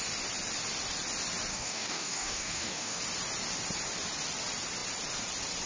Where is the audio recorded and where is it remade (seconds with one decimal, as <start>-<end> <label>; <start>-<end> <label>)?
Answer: 0.0-1.5 recorded; 1.5-3.0 remade; 3.0-5.7 recorded